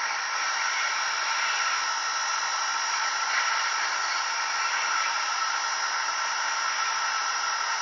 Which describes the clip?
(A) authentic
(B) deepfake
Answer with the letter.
A